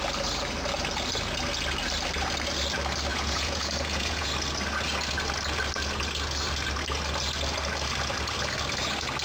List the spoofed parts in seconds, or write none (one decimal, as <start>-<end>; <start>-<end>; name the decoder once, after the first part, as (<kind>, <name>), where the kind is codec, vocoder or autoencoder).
3.1-4.3 (vocoder, Vocos)